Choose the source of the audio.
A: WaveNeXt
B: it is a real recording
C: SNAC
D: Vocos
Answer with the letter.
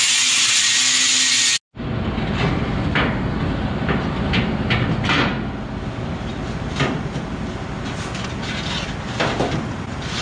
B